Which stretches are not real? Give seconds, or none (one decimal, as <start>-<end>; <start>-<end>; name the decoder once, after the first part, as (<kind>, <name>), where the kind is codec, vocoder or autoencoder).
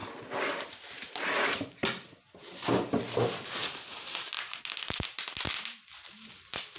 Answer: none